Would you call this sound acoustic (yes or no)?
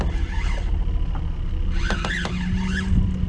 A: yes